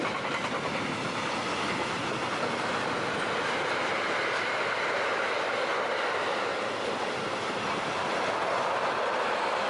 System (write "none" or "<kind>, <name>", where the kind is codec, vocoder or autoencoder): none